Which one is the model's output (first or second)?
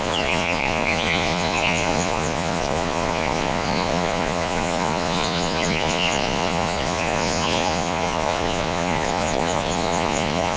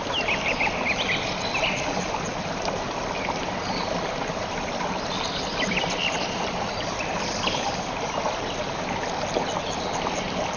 first